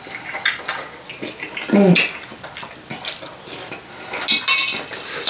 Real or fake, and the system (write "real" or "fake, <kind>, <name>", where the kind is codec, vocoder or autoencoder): real